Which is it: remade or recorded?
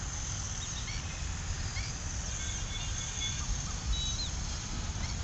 recorded